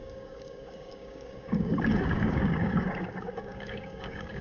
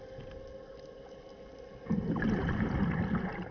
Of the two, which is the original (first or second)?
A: second